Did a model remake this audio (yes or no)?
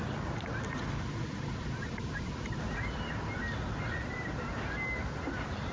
no